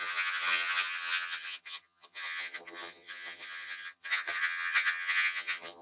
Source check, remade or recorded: remade